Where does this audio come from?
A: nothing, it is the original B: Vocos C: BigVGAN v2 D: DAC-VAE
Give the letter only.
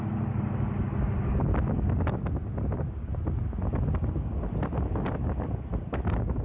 A